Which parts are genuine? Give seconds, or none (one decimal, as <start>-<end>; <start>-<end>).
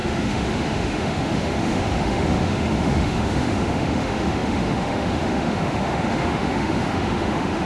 none